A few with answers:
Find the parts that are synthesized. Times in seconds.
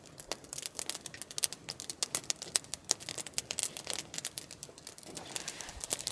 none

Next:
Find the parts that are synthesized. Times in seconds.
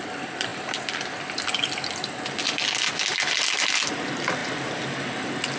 none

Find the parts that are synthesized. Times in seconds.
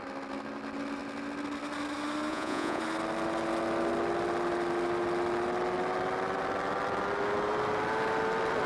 2.3-2.8 (vocoder, Vocos)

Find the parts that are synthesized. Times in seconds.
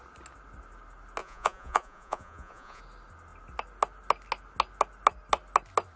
1.2-2.8 (vocoder, Vocos)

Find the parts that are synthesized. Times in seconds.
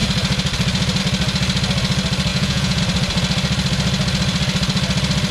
2.3-2.8 (vocoder, Vocos)